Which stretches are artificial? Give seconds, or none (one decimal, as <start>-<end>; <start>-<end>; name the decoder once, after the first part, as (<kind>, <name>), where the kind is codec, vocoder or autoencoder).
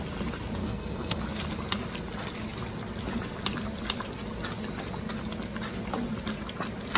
0.6-1.2 (codec, SNAC)